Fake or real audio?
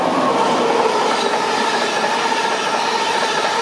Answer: fake